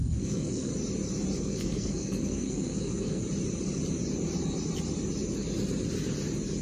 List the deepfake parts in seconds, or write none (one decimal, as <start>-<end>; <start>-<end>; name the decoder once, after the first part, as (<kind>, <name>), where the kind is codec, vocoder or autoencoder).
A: 0.0-0.7 (codec, SNAC); 1.4-3.2